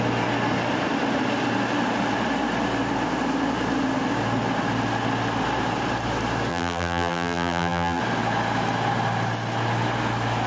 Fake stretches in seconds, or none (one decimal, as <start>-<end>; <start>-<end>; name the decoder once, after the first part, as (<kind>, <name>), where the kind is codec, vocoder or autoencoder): 6.5-8.0 (vocoder, BigVGAN v2)